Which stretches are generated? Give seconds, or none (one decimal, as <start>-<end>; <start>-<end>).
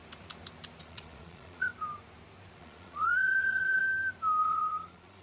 0.8-1.7; 2.6-3.8; 4.4-5.2